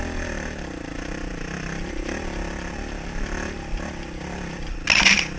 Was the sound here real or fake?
real